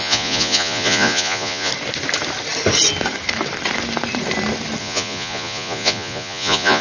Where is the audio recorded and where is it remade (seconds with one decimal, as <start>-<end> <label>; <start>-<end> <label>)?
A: 0.0-1.7 remade; 1.7-4.8 recorded; 4.8-6.8 remade